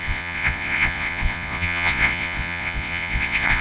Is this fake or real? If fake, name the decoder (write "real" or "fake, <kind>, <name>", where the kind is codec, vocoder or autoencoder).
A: fake, vocoder, Vocos